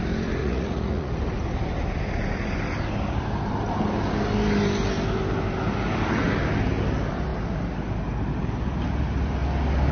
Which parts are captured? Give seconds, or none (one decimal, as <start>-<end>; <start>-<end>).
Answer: 0.0-0.4; 1.1-9.9